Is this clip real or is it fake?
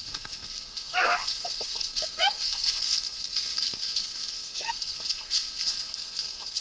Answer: fake